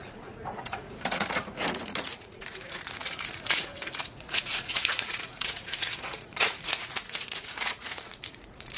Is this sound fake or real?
fake